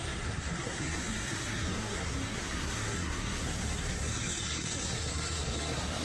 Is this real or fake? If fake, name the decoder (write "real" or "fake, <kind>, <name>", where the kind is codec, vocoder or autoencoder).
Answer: fake, codec, SNAC